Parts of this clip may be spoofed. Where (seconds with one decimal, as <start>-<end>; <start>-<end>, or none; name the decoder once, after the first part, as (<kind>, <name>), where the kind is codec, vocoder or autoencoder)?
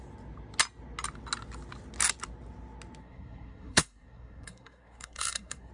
3.0-5.7 (codec, SNAC)